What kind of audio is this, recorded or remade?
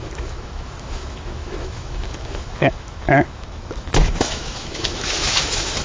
remade